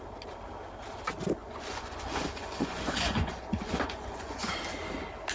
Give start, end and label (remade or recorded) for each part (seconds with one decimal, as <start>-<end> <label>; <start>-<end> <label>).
0.0-1.4 recorded; 1.4-4.6 remade; 4.6-5.3 recorded